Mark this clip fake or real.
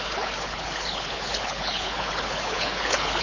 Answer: fake